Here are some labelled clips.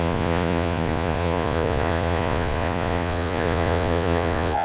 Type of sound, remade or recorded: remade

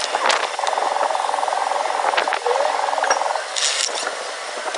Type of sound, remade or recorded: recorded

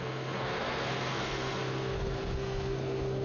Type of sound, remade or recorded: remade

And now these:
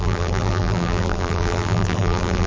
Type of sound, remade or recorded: remade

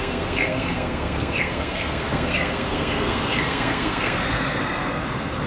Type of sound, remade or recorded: remade